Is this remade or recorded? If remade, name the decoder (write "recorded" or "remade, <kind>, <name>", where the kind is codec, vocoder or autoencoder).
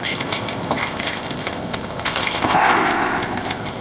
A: remade, codec, ZipCodec